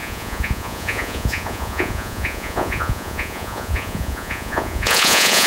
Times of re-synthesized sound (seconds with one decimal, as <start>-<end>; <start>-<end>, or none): 0.0-5.5